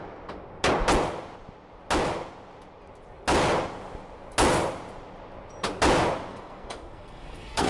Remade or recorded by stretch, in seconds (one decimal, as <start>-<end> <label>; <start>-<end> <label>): 0.0-6.3 recorded; 6.3-7.7 remade